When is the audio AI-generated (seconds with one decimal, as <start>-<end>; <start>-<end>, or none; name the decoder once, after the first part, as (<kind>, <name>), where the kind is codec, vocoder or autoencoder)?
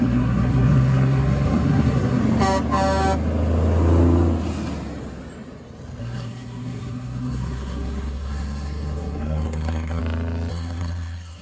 0.0-2.2 (codec, SNAC); 6.0-10.0; 10.5-11.4